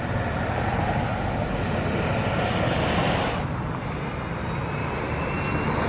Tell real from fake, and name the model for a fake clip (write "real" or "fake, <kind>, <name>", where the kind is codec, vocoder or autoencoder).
real